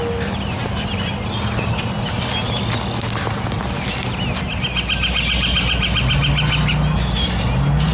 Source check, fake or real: real